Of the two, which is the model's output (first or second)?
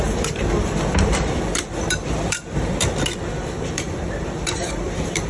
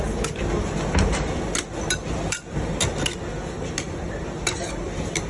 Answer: first